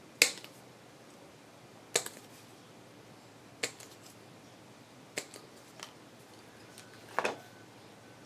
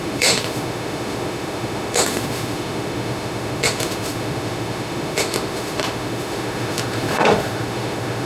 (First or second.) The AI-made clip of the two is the second